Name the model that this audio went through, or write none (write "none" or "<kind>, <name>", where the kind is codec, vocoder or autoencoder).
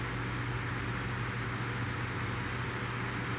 none